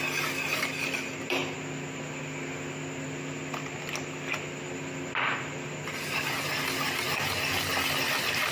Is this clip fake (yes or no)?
no